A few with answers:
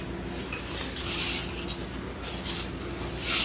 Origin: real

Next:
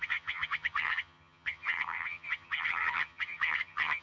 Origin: fake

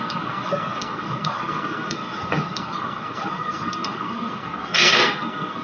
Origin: fake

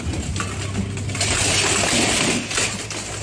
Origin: real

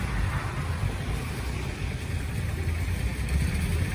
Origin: real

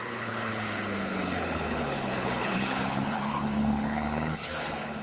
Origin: fake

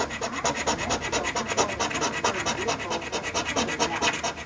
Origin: real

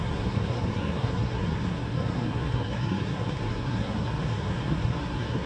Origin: fake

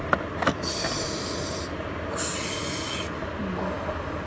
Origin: real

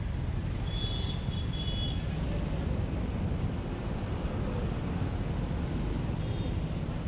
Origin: real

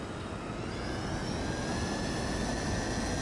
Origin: real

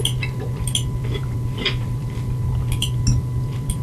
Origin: real